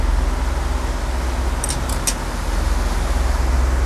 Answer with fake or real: real